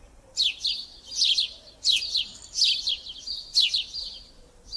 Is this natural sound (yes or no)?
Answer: yes